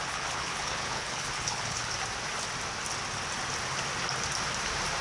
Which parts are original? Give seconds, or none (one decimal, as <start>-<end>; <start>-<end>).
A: 1.9-5.0